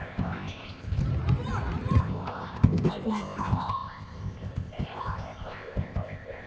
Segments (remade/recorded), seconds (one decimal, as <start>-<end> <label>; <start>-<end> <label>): 0.0-1.0 remade; 1.0-2.0 recorded; 2.0-6.5 remade